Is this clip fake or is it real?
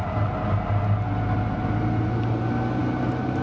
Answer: real